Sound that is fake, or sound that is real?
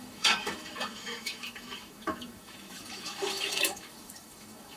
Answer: fake